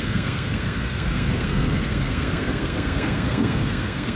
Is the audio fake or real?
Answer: fake